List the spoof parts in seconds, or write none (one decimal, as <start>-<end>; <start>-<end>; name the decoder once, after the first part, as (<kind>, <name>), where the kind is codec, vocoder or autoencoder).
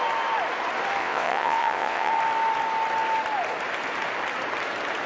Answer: 1.0-2.1 (vocoder, WaveNeXt)